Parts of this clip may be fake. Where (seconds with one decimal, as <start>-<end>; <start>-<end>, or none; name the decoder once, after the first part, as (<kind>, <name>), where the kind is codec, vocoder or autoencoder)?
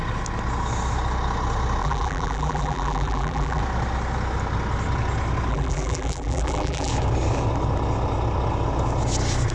1.8-3.6 (vocoder, BigVGAN v2); 5.5-6.9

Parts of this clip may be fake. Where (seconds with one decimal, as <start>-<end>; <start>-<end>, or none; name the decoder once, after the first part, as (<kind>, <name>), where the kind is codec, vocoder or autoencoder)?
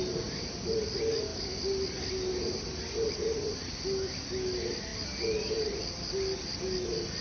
none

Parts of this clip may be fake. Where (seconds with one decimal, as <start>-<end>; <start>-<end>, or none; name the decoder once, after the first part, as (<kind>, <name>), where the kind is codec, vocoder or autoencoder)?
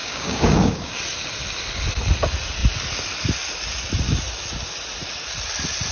0.0-1.0 (codec, DAC)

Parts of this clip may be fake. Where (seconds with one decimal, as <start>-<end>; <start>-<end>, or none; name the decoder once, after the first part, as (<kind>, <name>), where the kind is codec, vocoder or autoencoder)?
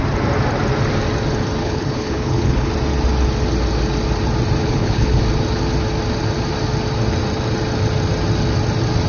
1.6-2.7 (codec, HILCodec); 4.6-5.2